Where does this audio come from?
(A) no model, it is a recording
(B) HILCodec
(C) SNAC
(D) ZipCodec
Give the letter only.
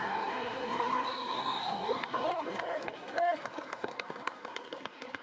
C